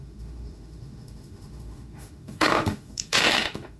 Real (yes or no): no